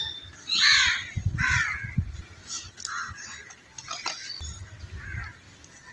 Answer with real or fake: real